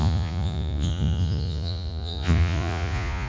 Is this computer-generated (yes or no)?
yes